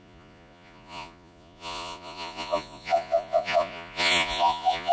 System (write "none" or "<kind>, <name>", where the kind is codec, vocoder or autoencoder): vocoder, Vocos